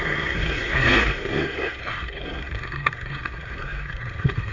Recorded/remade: remade